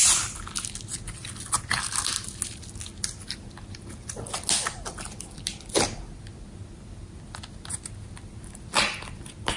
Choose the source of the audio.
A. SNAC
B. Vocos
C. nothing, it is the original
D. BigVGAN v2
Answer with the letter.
C